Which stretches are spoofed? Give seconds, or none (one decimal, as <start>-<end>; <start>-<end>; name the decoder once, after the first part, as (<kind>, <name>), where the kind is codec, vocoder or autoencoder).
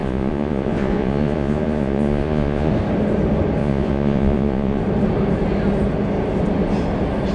0.0-2.7 (vocoder, Vocos); 3.6-4.8